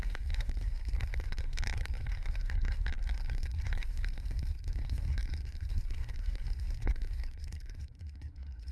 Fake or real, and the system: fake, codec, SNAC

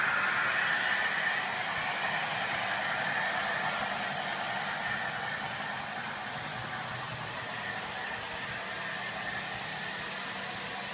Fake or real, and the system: real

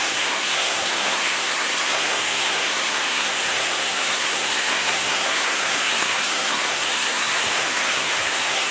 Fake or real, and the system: fake, codec, SNAC